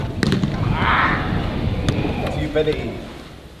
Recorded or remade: recorded